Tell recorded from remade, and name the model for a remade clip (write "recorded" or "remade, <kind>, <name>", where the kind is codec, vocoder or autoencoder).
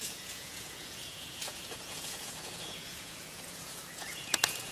remade, vocoder, Vocos